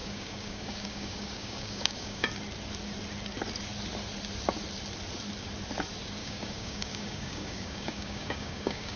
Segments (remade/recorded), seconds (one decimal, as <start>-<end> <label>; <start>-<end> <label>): 0.0-2.3 remade; 2.3-6.2 recorded; 6.2-9.0 remade

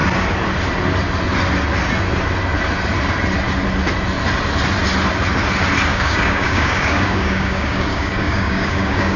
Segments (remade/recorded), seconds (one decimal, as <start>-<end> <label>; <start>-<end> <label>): 0.0-5.9 recorded; 5.9-9.2 remade

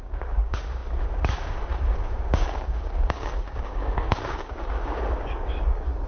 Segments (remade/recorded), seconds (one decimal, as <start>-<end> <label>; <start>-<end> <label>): 0.0-6.1 remade